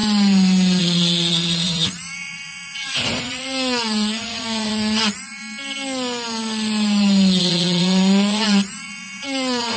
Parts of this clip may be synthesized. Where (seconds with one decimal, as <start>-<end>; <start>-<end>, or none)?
0.8-5.4; 7.4-9.8